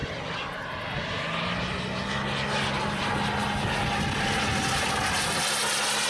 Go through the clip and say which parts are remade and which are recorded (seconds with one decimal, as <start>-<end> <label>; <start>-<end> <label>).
0.0-6.1 recorded